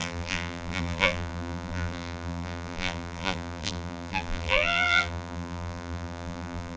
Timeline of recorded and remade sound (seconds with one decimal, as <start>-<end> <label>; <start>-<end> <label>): 0.0-6.8 remade

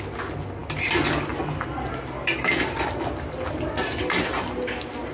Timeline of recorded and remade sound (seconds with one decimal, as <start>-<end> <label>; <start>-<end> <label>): 0.0-5.1 recorded

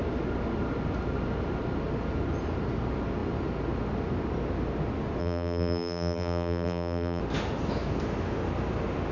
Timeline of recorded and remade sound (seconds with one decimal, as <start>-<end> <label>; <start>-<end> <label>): 0.0-5.2 recorded; 5.2-7.2 remade; 7.2-9.1 recorded

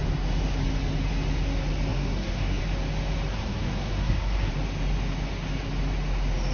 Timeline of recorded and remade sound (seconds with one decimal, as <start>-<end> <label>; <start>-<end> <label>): 0.0-1.9 recorded; 1.9-2.6 remade; 2.6-3.3 recorded; 3.3-4.5 remade; 4.5-6.5 recorded

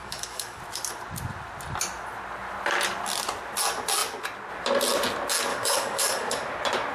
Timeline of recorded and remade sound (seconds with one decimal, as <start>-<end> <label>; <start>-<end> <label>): 0.0-0.6 remade; 0.6-5.5 recorded; 5.5-6.3 remade; 6.3-6.9 recorded